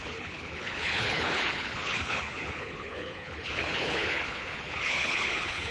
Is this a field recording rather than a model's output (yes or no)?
no